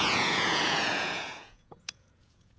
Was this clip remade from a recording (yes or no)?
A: yes